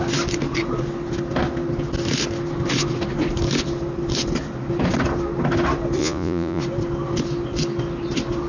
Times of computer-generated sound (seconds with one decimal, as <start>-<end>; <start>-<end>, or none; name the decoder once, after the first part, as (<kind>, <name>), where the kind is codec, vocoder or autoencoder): 6.0-6.6 (vocoder, Vocos)